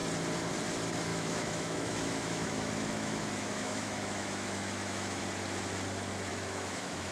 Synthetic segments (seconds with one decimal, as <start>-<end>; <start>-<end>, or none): 1.1-5.2; 6.3-7.1